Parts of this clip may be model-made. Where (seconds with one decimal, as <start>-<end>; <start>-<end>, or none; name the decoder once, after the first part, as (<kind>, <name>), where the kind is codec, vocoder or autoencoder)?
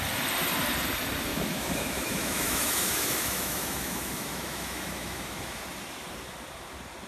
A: 1.3-5.6 (autoencoder, DAC-VAE)